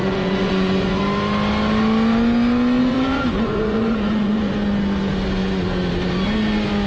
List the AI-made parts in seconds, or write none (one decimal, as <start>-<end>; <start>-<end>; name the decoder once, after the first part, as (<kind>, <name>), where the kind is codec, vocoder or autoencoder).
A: 0.0-1.0 (vocoder, Vocos); 2.8-4.5